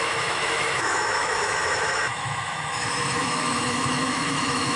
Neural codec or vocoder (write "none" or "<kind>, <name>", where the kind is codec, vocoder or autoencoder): autoencoder, DAC-VAE